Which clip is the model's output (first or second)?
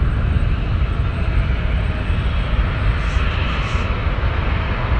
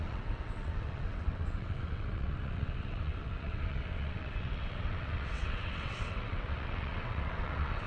second